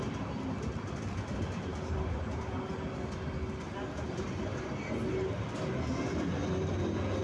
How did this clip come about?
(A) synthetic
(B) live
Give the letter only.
B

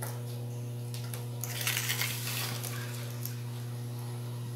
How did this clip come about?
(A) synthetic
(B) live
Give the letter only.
B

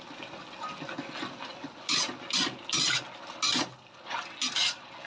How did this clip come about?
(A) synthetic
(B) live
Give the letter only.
B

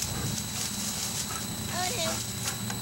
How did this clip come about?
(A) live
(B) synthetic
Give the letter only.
A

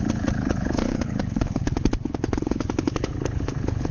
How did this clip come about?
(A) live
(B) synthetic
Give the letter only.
B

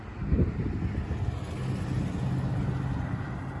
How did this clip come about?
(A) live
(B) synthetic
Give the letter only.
A